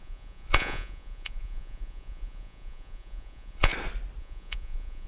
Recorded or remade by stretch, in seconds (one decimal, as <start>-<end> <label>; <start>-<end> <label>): 0.0-3.7 remade; 3.7-4.2 recorded; 4.2-5.1 remade